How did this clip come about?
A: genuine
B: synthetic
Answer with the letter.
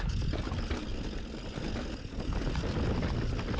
A